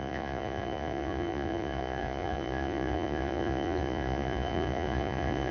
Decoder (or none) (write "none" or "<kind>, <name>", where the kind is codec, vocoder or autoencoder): vocoder, Vocos